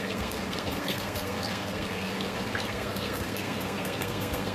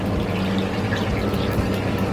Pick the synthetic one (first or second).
first